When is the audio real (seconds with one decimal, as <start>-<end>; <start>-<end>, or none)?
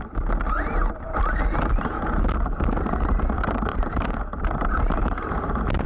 0.0-3.7; 4.8-5.9